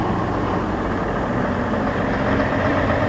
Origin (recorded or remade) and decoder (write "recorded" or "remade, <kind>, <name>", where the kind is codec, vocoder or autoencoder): recorded